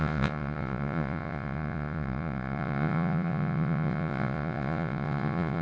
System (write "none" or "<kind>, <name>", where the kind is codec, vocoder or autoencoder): vocoder, Vocos